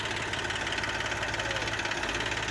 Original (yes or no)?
yes